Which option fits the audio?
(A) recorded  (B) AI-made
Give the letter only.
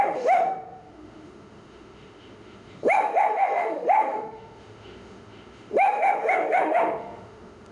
B